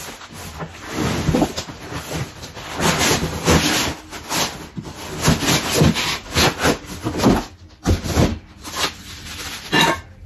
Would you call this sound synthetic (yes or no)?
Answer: no